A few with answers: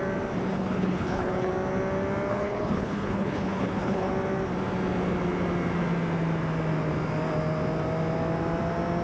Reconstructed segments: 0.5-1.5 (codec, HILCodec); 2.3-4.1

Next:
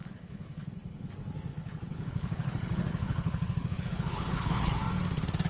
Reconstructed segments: 0.0-1.1 (codec, HILCodec); 1.5-4.8

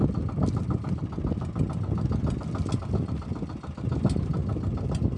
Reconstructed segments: none